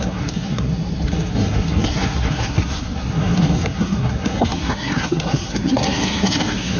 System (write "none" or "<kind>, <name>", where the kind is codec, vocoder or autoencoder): codec, SNAC